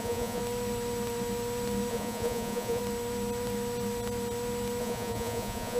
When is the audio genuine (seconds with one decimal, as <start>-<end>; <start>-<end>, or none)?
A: 0.4-1.9; 2.8-4.8